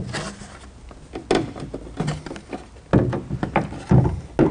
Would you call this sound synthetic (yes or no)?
no